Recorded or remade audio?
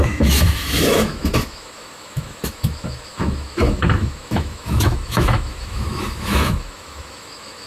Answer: remade